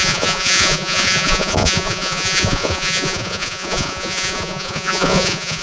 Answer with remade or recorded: remade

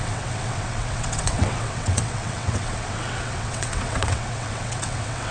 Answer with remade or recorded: remade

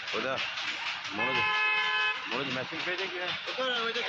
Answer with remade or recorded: recorded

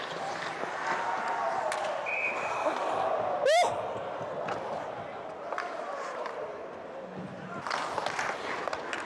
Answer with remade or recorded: recorded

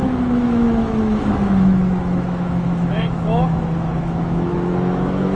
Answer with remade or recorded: remade